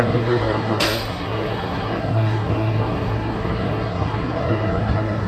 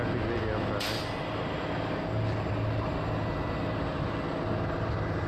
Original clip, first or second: second